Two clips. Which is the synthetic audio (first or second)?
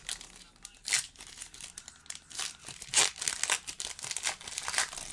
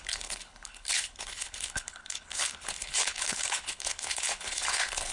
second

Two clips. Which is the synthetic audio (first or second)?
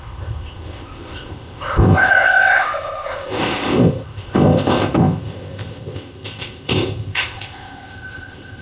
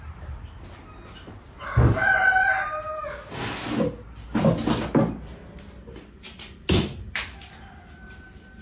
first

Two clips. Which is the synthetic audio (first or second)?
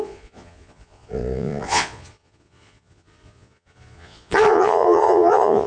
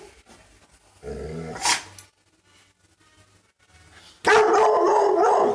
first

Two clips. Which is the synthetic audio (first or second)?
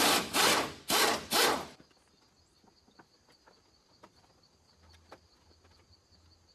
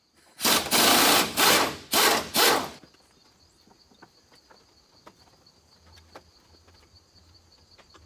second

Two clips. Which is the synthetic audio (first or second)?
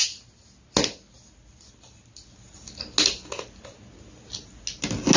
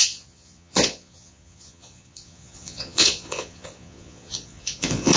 second